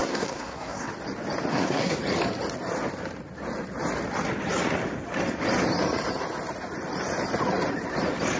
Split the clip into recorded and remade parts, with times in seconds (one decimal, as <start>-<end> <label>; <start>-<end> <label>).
0.0-0.9 remade; 0.9-1.5 recorded; 1.5-2.0 remade; 2.0-8.4 recorded